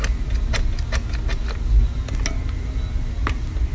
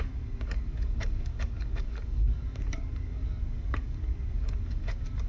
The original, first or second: first